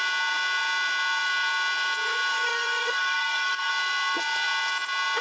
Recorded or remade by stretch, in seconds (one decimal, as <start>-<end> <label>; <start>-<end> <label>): 0.0-2.3 recorded; 2.3-3.7 remade; 3.7-5.2 recorded